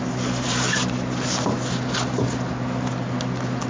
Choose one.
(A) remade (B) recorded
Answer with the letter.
B